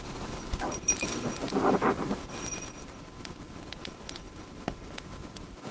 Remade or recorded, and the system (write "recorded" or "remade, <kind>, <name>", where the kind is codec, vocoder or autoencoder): recorded